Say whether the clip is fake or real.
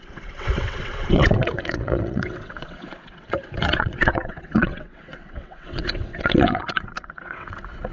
fake